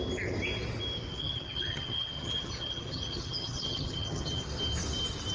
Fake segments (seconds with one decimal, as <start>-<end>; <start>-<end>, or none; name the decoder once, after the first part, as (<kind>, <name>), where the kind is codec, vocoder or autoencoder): 1.2-4.4 (vocoder, HiFi-GAN)